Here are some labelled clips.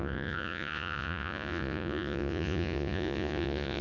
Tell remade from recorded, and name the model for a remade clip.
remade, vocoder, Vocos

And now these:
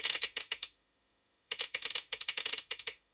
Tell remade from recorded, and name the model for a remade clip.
remade, autoencoder, DAC-VAE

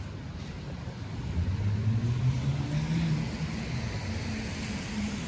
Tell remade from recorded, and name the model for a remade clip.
recorded